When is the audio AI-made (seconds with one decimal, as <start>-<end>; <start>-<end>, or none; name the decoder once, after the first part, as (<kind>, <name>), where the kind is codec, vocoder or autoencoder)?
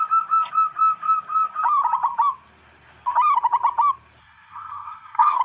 4.2-5.4 (codec, SNAC)